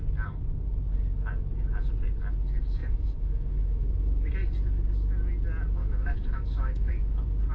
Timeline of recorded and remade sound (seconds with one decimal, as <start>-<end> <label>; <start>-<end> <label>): 0.0-2.8 recorded; 2.8-4.3 remade; 4.3-5.8 recorded; 5.8-6.9 remade; 6.9-7.5 recorded